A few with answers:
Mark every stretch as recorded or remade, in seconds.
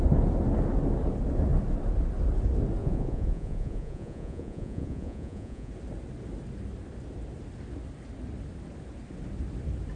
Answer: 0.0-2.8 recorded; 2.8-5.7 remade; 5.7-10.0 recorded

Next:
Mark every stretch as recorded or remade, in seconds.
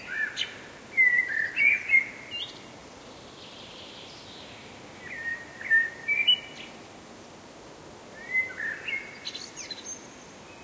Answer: 0.0-2.8 recorded; 2.8-3.8 remade; 3.8-5.3 recorded; 5.3-6.7 remade; 6.7-8.2 recorded; 8.2-8.9 remade; 8.9-10.6 recorded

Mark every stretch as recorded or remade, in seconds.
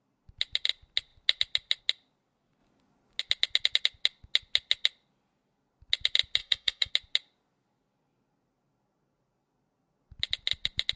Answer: 0.0-6.4 recorded; 6.4-6.9 remade; 6.9-11.0 recorded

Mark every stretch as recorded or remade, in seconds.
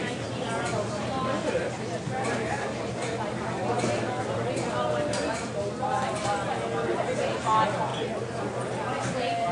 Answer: 0.0-9.5 recorded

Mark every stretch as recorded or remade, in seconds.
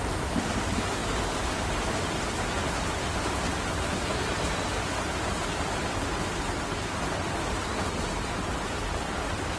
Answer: 0.0-9.6 recorded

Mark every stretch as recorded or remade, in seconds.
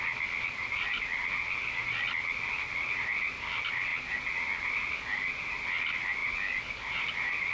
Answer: 0.0-7.5 recorded